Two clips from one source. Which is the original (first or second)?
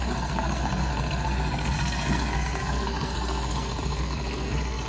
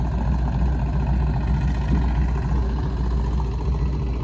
second